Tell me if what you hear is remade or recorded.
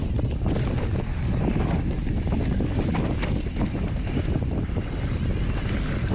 recorded